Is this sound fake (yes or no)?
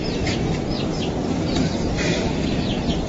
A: yes